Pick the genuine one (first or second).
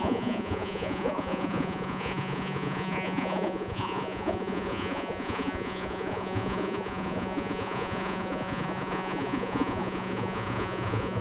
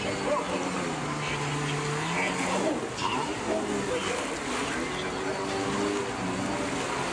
second